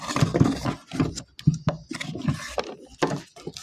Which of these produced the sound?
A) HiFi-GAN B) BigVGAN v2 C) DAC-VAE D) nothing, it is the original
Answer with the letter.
D